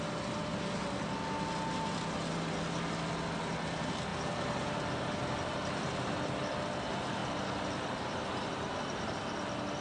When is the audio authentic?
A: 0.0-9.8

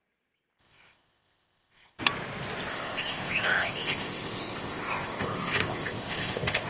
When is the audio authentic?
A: 0.0-0.6; 2.0-2.7

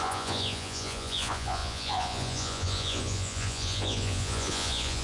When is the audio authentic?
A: none

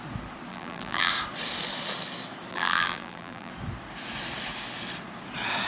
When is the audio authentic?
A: 0.0-0.5; 1.1-2.5; 3.5-5.7